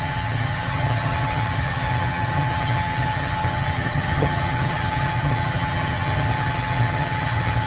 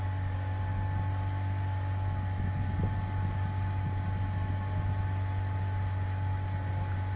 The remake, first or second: first